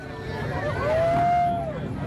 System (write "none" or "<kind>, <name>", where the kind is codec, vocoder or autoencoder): none